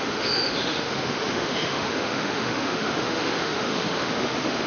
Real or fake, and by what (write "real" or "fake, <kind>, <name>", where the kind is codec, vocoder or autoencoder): fake, autoencoder, DAC-VAE